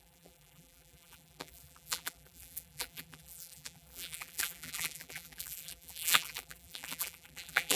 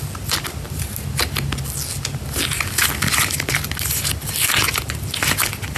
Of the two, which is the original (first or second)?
second